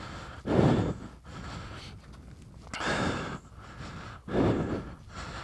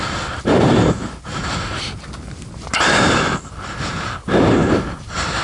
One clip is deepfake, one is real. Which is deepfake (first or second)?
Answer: second